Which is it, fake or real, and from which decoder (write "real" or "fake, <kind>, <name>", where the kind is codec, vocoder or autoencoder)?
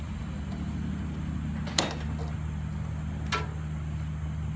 real